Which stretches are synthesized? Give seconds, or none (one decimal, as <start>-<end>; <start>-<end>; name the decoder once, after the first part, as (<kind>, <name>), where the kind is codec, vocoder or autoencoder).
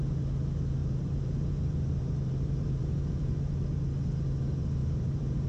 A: 0.8-3.6 (vocoder, BigVGAN v2); 4.8-5.5